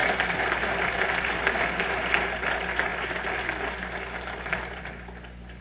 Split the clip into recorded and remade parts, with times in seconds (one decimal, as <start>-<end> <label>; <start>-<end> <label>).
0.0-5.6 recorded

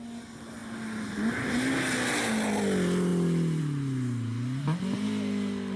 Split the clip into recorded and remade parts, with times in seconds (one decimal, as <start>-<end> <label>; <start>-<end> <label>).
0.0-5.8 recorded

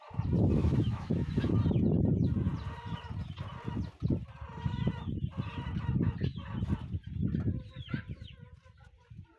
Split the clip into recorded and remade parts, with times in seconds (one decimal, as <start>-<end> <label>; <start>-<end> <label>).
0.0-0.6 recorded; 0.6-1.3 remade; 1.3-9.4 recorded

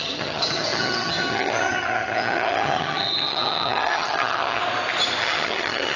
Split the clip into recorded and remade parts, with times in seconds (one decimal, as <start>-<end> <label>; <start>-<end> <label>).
0.0-4.6 remade; 4.6-5.2 recorded; 5.2-6.0 remade

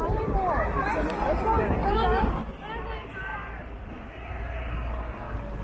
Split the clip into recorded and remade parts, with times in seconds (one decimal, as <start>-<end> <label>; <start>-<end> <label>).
0.0-1.8 recorded; 1.8-2.4 remade; 2.4-5.6 recorded

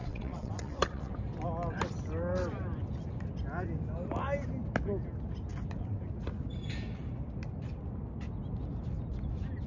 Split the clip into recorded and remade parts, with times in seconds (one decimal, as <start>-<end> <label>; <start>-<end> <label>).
0.0-1.1 remade; 1.1-9.7 recorded

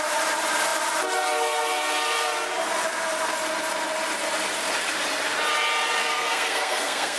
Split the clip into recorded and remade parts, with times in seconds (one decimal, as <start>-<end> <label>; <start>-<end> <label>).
0.0-6.0 recorded; 6.0-7.2 remade

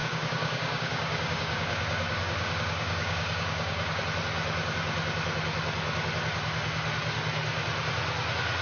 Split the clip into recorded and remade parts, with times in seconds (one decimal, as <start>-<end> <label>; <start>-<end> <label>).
0.0-4.0 remade; 4.0-8.6 recorded